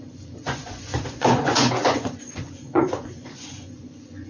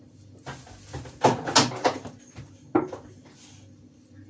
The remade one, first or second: first